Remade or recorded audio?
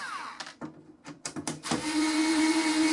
remade